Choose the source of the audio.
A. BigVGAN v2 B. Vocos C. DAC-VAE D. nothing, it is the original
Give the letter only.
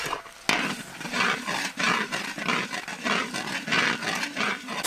D